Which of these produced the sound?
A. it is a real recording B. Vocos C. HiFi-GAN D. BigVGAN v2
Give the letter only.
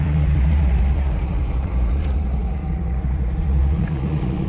B